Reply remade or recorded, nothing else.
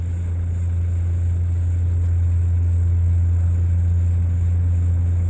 recorded